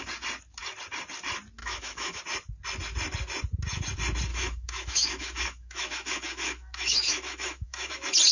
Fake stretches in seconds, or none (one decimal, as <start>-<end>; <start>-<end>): 1.6-2.2; 4.3-7.9